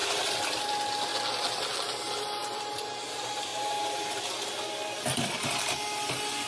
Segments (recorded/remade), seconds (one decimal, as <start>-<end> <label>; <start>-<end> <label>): 0.0-6.5 recorded